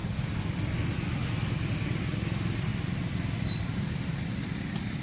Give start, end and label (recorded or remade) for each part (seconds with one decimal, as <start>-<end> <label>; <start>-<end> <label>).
0.0-5.0 recorded